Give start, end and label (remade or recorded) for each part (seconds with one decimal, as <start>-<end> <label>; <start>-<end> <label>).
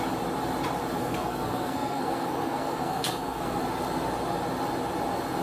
0.0-1.0 recorded; 1.0-3.6 remade; 3.6-5.4 recorded